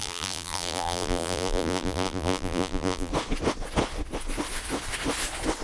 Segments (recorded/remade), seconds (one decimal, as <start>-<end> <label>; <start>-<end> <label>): 0.0-3.1 remade; 3.1-5.6 recorded